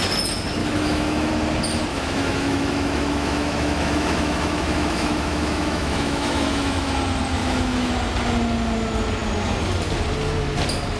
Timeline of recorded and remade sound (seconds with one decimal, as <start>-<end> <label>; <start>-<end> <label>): 0.0-0.6 recorded; 0.6-1.3 remade; 1.3-1.9 recorded; 1.9-6.9 remade; 6.9-7.4 recorded; 7.4-7.9 remade; 7.9-11.0 recorded